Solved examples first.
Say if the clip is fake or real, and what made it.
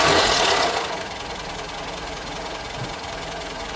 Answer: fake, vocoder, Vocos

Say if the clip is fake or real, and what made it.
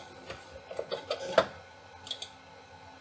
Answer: real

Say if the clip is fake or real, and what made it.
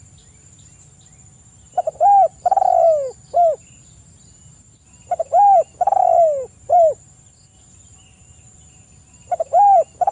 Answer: real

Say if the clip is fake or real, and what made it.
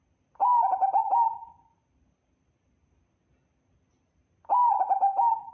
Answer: real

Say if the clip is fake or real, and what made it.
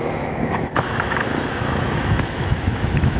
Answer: fake, autoencoder, DAC-VAE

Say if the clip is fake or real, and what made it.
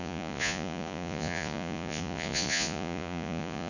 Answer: fake, vocoder, Vocos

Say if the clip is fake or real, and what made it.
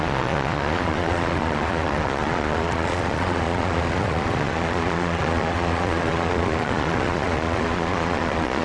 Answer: fake, vocoder, Vocos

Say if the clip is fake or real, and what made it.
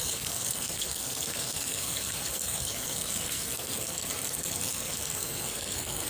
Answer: fake, codec, SNAC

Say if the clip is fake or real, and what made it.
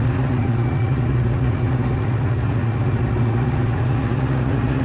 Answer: fake, vocoder, Vocos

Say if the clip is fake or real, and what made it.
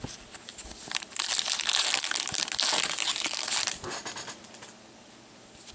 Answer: real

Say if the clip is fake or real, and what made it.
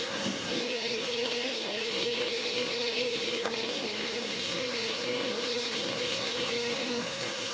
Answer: fake, codec, SNAC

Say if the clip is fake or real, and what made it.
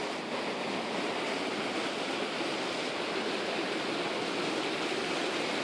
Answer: real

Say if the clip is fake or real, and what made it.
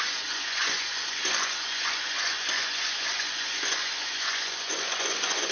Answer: fake, vocoder, Vocos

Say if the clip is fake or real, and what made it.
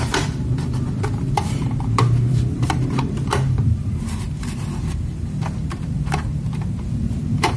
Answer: fake, vocoder, BigVGAN v2